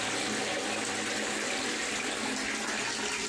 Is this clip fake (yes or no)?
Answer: no